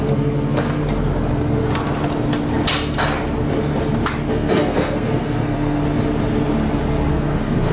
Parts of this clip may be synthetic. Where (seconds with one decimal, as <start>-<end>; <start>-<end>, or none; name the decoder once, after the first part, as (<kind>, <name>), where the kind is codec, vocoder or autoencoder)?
0.0-0.8 (codec, SNAC); 4.3-5.8; 7.1-7.7